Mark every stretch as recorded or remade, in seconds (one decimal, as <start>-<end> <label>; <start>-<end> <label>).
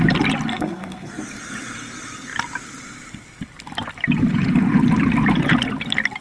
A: 0.0-0.5 recorded; 0.5-1.1 remade; 1.1-6.2 recorded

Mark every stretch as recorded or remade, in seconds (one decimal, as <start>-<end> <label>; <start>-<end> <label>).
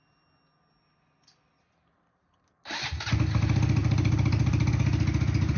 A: 0.0-2.2 recorded; 2.2-2.9 remade; 2.9-3.8 recorded; 3.8-4.7 remade; 4.7-5.6 recorded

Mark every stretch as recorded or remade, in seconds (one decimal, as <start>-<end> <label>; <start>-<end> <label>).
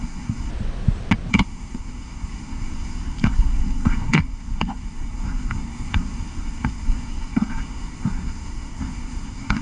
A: 0.0-0.5 remade; 0.5-1.3 recorded; 1.3-9.6 remade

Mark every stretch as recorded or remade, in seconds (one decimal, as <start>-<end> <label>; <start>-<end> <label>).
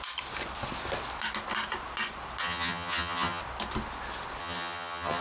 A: 0.0-2.4 recorded; 2.4-3.4 remade; 3.4-4.4 recorded; 4.4-5.2 remade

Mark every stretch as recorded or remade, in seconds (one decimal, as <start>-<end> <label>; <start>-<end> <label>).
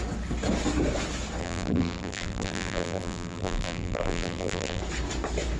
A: 0.0-1.4 recorded; 1.4-4.8 remade; 4.8-5.6 recorded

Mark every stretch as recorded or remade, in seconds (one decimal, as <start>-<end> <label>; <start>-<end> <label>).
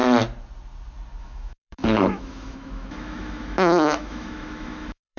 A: 0.0-1.2 recorded; 1.2-5.2 remade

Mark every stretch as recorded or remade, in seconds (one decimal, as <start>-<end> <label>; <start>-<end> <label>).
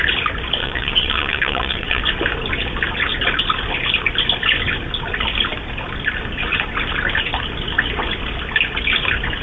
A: 0.0-0.6 recorded; 0.6-2.0 remade; 2.0-9.4 recorded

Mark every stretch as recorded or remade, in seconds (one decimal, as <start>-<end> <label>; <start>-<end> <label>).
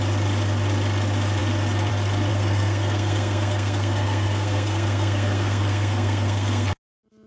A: 0.0-2.3 recorded; 2.3-6.7 remade; 6.7-7.3 recorded